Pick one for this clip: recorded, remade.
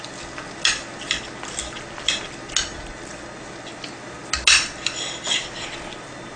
recorded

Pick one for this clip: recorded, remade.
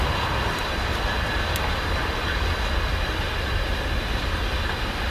recorded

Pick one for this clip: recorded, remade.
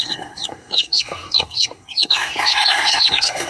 remade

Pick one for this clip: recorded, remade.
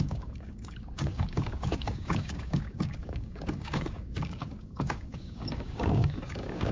remade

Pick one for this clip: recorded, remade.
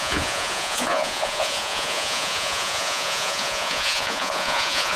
remade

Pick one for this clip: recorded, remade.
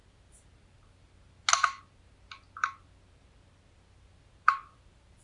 recorded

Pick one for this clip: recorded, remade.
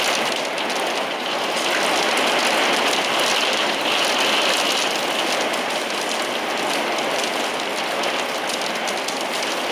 recorded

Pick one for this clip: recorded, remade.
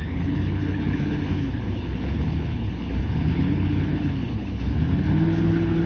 remade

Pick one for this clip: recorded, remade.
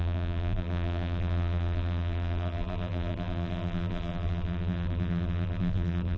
remade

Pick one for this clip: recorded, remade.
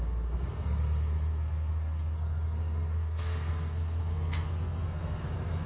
remade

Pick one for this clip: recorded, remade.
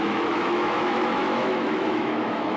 remade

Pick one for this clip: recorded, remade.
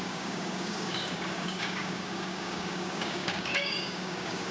remade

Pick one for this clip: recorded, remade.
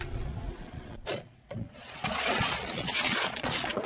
remade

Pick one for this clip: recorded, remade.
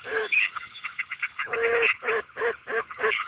remade